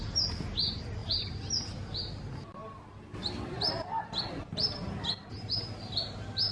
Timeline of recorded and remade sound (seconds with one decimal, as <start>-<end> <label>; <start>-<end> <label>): 0.0-1.0 recorded; 1.0-4.9 remade; 4.9-6.5 recorded